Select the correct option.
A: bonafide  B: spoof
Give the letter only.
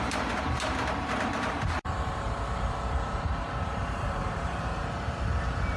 B